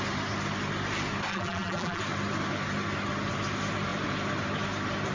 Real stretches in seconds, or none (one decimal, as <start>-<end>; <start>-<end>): 0.0-1.3; 2.0-5.1